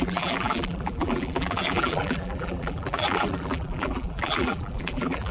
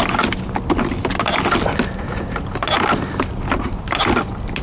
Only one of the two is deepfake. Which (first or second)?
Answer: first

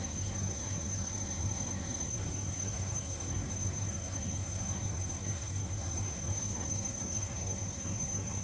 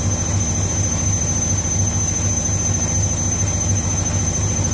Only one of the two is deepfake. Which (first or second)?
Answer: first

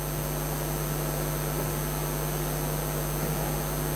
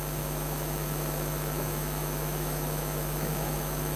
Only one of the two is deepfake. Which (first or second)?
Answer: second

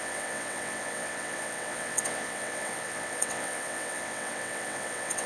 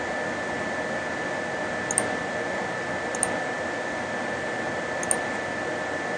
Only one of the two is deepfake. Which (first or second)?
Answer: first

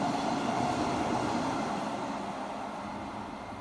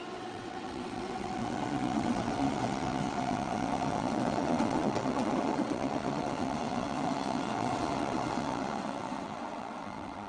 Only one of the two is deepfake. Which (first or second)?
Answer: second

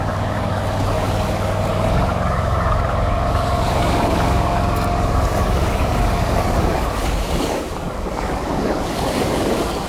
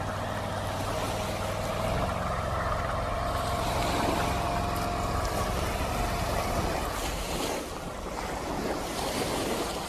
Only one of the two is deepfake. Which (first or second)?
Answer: first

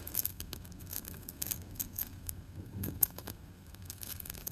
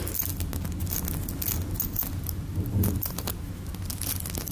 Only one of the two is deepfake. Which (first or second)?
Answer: first